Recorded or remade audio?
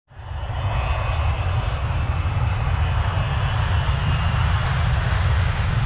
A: recorded